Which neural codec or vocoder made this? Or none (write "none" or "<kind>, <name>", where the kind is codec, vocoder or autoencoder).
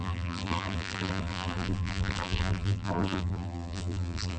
vocoder, BigVGAN v2